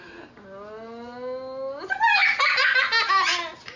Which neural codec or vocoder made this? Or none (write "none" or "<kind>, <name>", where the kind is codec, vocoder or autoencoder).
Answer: none